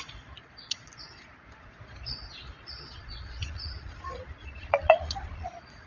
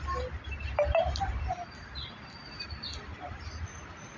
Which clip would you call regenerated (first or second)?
first